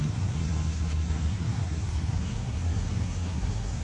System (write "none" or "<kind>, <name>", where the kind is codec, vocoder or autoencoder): codec, SNAC